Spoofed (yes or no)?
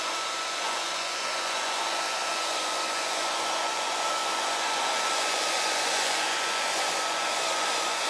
yes